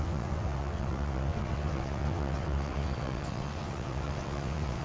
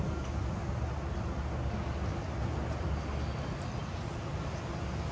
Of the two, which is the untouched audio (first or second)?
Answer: second